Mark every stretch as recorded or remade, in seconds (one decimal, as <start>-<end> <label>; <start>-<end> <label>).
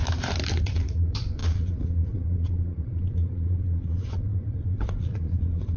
0.0-0.6 recorded; 0.6-5.8 remade